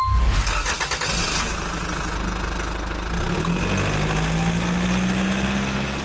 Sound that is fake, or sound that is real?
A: real